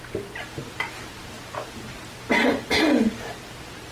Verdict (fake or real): real